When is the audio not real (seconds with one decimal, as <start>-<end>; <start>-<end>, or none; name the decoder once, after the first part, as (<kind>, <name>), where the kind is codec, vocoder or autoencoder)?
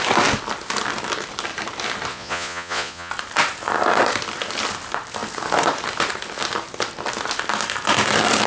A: 2.1-3.1 (vocoder, Vocos)